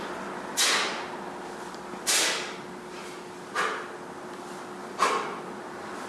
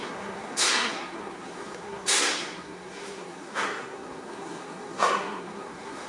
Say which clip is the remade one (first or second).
second